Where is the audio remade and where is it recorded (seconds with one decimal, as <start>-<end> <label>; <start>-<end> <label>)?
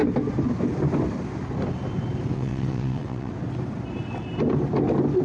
0.0-2.3 recorded; 2.3-3.3 remade; 3.3-5.2 recorded